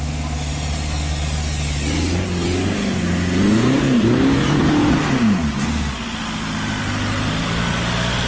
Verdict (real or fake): real